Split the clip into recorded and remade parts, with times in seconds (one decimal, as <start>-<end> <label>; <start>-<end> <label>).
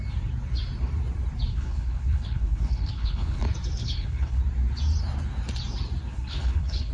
0.0-1.5 recorded; 1.5-3.4 remade; 3.4-3.8 recorded; 3.8-4.4 remade; 4.4-6.1 recorded; 6.1-6.9 remade